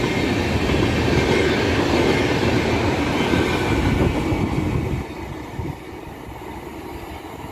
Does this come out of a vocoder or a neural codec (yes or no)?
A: no